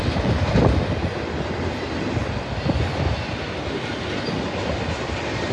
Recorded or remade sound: recorded